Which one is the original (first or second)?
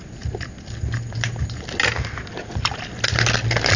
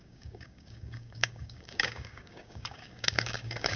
first